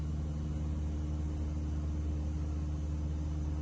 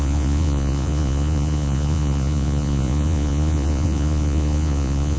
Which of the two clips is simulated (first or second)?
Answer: second